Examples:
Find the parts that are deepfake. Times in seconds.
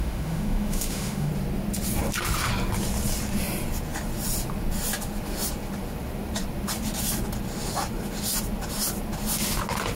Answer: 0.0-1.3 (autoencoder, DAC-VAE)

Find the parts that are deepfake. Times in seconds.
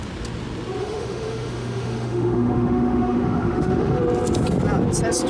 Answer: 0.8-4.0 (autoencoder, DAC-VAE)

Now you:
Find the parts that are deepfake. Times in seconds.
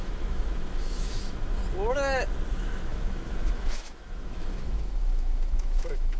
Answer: 0.0-1.6 (autoencoder, DAC-VAE); 2.5-6.2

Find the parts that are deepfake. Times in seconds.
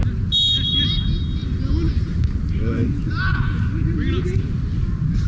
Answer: none